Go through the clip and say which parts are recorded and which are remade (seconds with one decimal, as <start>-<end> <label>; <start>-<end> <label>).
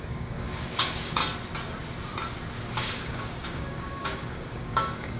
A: 0.0-1.2 remade; 1.2-2.7 recorded; 2.7-5.2 remade